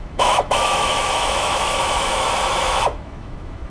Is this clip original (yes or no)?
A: no